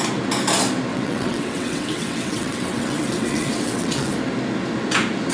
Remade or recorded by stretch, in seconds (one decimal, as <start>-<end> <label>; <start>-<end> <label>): 0.0-0.9 recorded; 0.9-4.1 remade; 4.1-5.3 recorded